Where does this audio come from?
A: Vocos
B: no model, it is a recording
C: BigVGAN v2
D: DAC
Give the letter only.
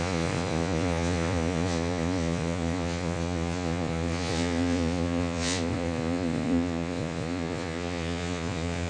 A